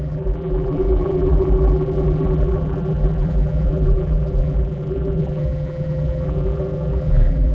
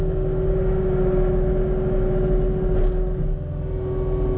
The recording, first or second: second